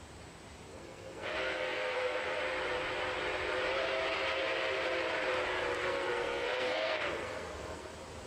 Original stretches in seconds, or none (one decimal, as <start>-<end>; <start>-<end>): 0.0-0.7; 2.4-5.8; 7.9-8.3